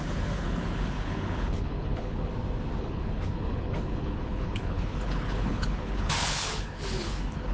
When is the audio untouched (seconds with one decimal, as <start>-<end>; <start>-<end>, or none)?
2.3-2.8

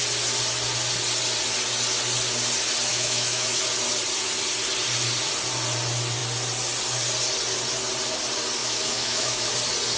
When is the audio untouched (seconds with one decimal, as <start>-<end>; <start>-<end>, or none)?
0.0-2.9; 3.6-8.6; 9.5-10.0

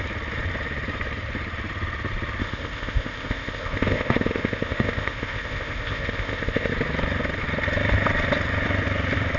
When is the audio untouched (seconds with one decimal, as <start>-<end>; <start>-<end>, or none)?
0.0-2.4; 6.7-9.4

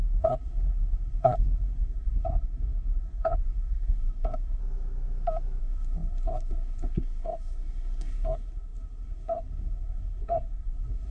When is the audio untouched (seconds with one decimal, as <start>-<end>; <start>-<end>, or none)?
4.6-5.6